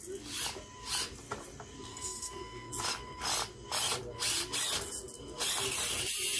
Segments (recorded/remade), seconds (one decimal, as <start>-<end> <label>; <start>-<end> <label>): 0.0-1.9 recorded; 1.9-2.7 remade; 2.7-6.4 recorded